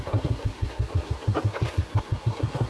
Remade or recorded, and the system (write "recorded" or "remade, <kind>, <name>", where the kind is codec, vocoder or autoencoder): remade, codec, SNAC